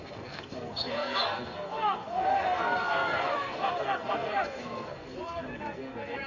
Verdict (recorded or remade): remade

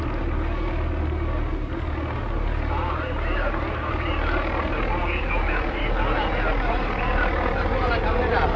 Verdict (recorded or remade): recorded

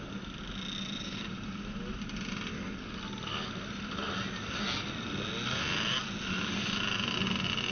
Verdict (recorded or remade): recorded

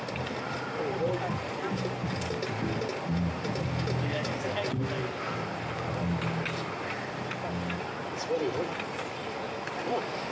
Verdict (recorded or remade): recorded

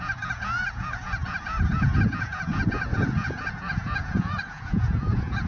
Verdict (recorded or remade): remade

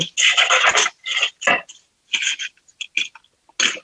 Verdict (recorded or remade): recorded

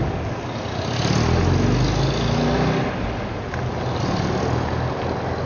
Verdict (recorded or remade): recorded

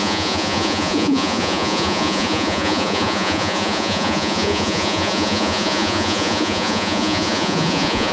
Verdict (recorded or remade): remade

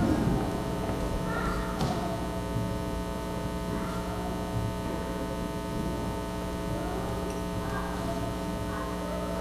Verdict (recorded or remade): recorded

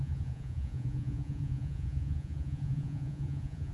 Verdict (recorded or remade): remade